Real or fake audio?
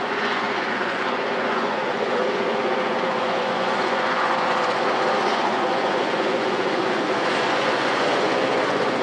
fake